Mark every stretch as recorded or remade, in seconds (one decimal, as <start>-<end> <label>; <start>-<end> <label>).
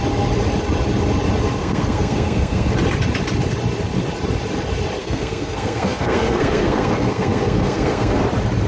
0.0-1.6 recorded; 1.6-2.7 remade; 2.7-5.0 recorded; 5.0-8.2 remade; 8.2-8.7 recorded